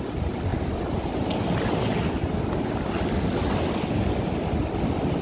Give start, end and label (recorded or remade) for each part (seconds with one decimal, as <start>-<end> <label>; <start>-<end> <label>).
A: 0.0-5.2 recorded